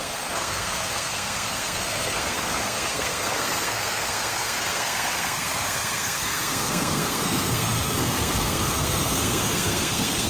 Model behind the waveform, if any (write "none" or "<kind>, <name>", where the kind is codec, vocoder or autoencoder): codec, SNAC